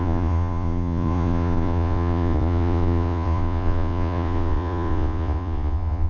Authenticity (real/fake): fake